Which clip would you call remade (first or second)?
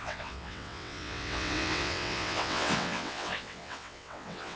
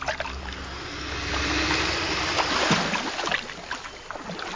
first